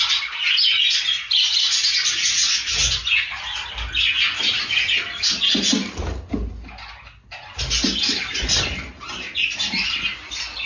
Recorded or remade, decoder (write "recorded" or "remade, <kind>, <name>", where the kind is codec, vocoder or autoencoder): recorded